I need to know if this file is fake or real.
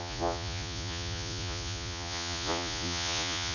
fake